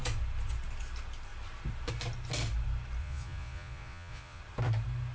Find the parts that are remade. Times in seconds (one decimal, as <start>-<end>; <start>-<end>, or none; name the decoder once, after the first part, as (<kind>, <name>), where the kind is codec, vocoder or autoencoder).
3.0-4.4 (vocoder, Vocos)